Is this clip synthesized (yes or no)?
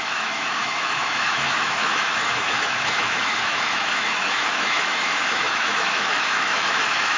yes